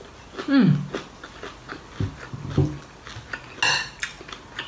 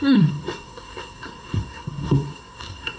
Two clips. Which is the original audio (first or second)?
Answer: first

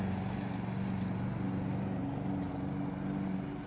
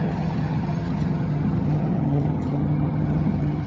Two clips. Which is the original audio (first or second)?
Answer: first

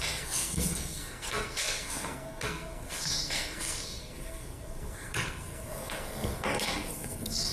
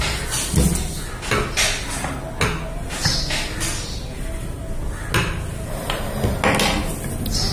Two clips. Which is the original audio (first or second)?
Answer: second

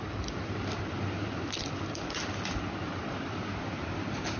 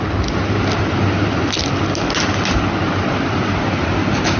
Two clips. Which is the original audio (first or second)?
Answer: second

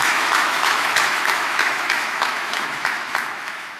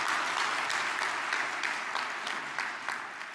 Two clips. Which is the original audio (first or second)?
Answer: second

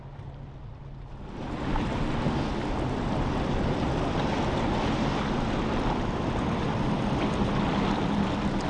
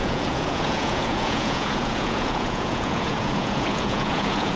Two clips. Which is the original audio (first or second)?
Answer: first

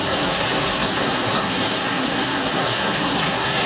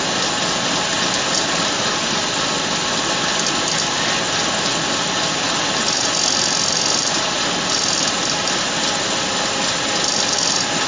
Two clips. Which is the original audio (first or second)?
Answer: second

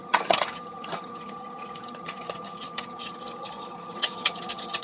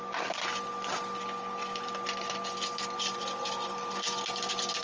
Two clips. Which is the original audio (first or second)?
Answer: second